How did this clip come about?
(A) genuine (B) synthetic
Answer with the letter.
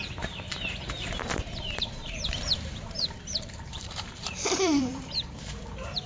B